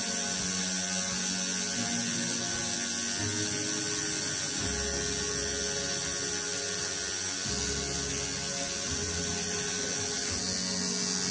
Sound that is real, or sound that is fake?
real